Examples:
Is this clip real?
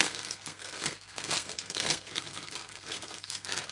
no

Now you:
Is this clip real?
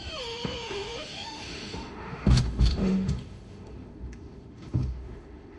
no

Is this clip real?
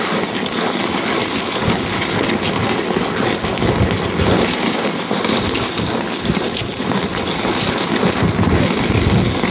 yes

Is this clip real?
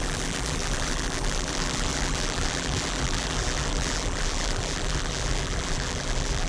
no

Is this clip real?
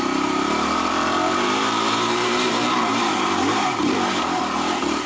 no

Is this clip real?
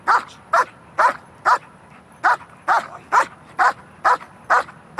yes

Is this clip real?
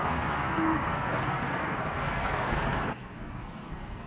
no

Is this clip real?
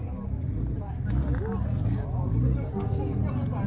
yes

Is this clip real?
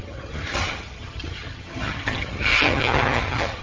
no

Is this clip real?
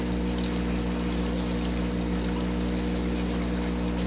yes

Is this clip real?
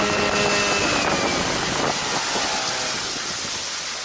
yes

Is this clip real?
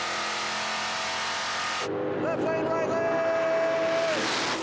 yes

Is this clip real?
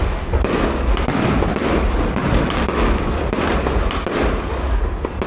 yes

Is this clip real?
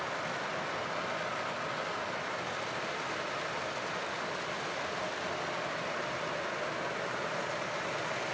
yes